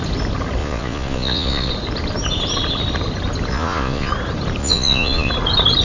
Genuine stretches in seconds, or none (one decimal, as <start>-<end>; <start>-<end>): 0.0-0.6; 1.7-3.5; 4.1-4.6; 5.3-5.8